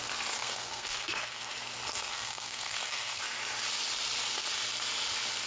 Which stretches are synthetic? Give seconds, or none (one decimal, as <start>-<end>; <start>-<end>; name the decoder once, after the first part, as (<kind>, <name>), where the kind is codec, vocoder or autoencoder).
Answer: 0.4-1.5 (codec, SNAC); 1.9-3.2